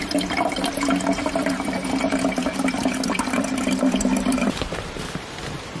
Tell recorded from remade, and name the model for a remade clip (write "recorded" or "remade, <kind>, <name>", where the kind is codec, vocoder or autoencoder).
remade, vocoder, BigVGAN v2